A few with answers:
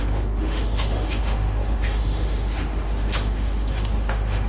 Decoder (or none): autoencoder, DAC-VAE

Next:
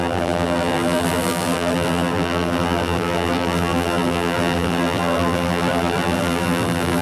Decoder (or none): vocoder, BigVGAN v2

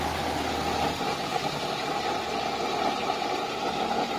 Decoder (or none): none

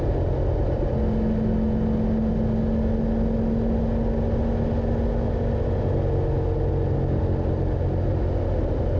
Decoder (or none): none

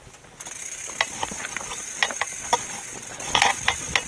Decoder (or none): none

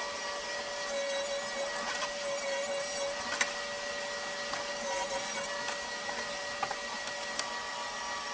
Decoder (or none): none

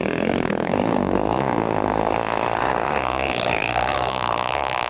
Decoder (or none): codec, SNAC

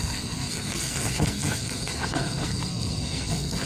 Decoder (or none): codec, SNAC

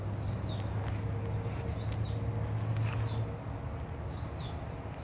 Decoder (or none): none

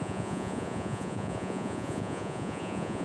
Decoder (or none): vocoder, Vocos